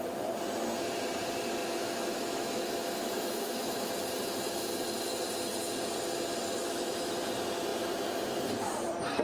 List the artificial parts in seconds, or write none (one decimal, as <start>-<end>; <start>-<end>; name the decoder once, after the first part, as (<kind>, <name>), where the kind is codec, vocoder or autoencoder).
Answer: 1.6-3.9 (autoencoder, DAC-VAE); 6.6-7.1